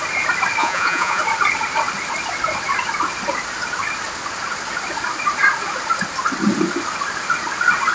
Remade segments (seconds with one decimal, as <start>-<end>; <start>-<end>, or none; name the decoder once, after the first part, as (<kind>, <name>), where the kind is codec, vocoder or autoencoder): 0.6-1.2 (vocoder, Vocos)